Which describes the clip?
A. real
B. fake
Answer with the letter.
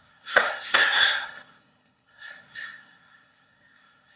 B